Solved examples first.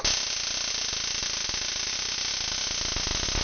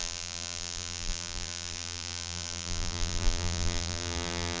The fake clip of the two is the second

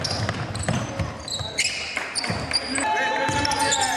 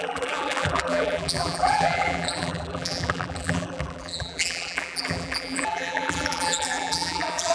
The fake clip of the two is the second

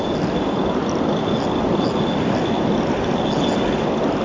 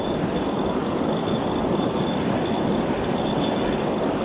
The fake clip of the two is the second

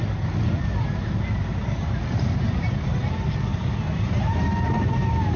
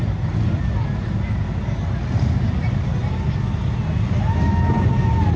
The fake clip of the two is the first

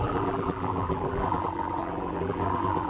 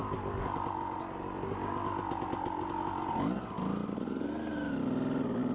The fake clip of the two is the first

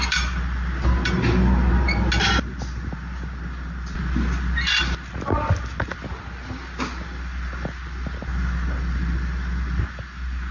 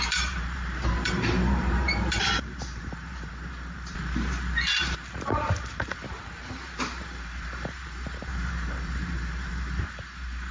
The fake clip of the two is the second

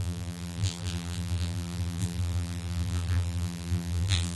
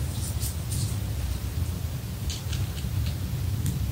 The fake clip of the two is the first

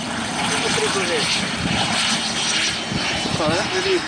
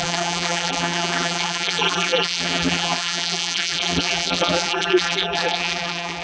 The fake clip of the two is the second